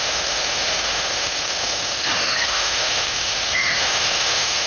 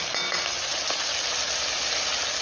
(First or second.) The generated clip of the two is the first